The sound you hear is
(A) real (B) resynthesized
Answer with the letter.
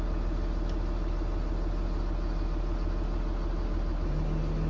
A